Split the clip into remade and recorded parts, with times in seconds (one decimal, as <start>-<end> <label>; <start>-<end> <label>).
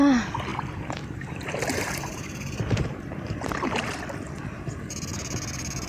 0.0-0.5 recorded; 0.5-4.0 remade; 4.0-5.9 recorded